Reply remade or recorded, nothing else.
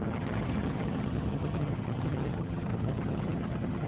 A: remade